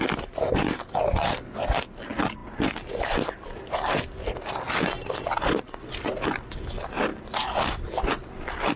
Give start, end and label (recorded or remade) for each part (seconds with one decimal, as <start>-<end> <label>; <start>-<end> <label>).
0.0-8.8 recorded

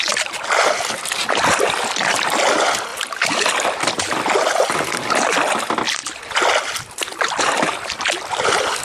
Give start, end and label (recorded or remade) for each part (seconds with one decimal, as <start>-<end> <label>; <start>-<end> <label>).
0.0-2.9 recorded; 2.9-4.0 remade; 4.0-8.8 recorded